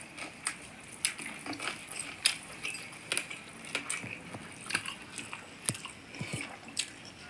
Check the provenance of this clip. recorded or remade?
recorded